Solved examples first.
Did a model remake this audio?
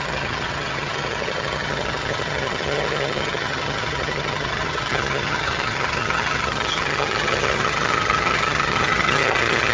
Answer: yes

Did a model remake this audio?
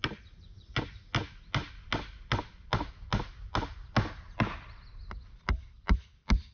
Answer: no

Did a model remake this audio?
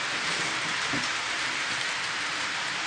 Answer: yes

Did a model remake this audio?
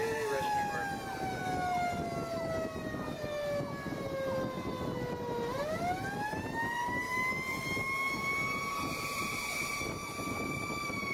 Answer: no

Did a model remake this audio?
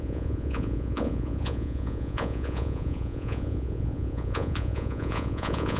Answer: yes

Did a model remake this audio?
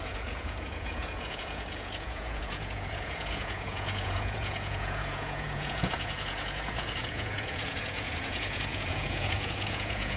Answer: yes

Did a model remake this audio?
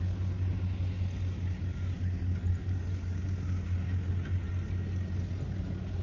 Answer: no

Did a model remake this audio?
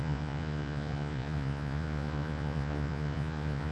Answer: yes